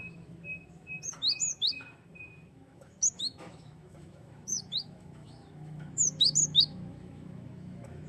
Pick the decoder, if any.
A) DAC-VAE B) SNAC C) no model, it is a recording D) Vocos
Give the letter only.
A